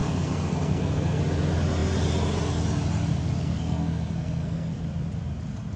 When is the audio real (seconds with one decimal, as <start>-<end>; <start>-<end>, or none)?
1.2-3.4; 4.8-5.8